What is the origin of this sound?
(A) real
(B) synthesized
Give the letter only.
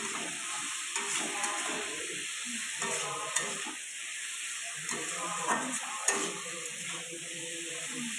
B